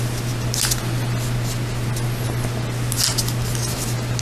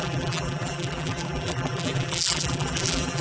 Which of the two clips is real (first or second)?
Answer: first